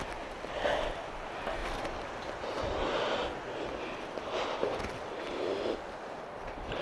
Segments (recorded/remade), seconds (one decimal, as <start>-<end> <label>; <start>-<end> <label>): 0.0-1.6 recorded; 1.6-3.7 remade; 3.7-6.8 recorded